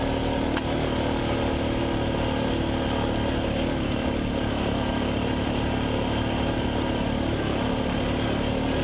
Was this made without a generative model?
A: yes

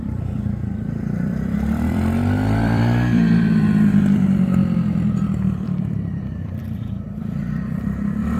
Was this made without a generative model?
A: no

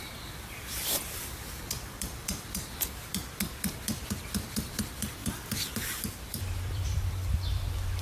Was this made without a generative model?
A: no